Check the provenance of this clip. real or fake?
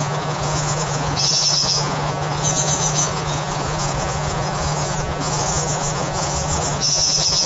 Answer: fake